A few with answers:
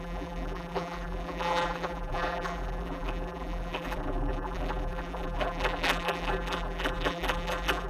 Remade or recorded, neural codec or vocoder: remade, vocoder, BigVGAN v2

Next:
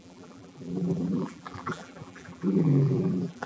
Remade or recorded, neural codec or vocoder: remade, vocoder, BigVGAN v2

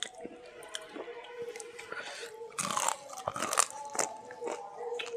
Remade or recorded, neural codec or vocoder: recorded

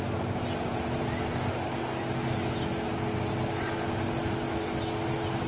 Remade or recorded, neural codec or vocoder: recorded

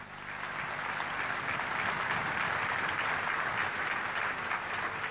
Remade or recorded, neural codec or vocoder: recorded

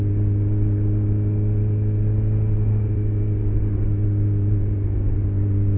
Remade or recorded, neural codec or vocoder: recorded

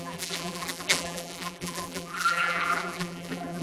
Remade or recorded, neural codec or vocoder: remade, vocoder, BigVGAN v2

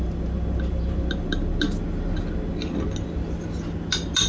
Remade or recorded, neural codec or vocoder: recorded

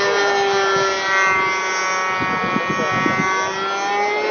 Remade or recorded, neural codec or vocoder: recorded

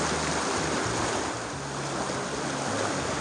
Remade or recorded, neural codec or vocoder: recorded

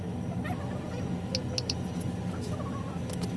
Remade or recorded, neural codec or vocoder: recorded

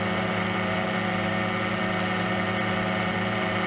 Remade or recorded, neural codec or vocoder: remade, vocoder, BigVGAN v2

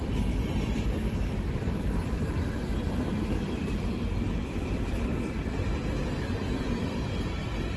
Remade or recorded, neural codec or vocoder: remade, vocoder, BigVGAN v2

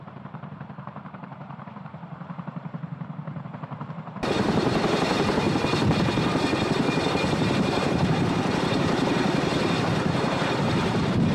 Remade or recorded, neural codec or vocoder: remade, vocoder, BigVGAN v2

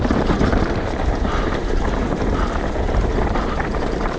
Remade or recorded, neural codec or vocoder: remade, vocoder, BigVGAN v2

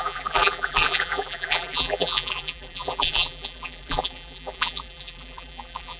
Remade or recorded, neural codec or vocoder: remade, vocoder, BigVGAN v2